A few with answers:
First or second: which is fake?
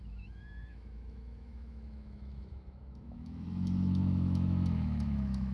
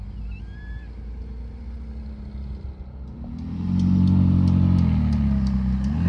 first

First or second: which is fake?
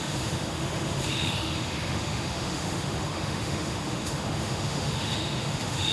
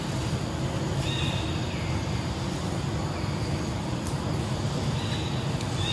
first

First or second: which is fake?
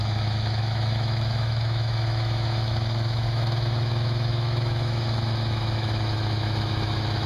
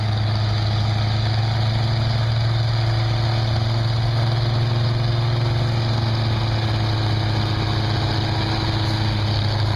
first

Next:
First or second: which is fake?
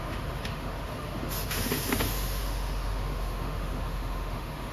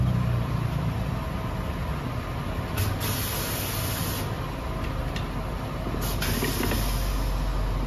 first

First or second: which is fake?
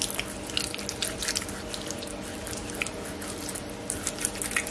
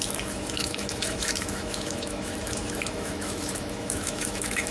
second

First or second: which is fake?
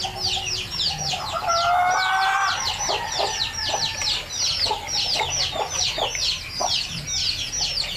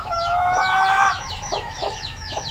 second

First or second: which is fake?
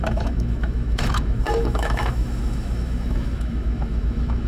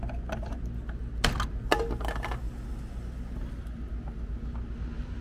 first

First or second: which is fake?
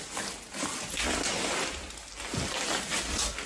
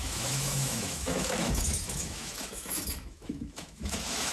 second